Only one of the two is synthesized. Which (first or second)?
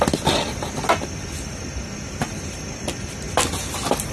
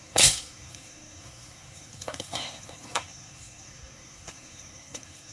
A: second